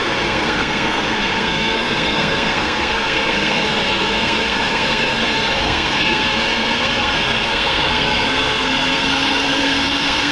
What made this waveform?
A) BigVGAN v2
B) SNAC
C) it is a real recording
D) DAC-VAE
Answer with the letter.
B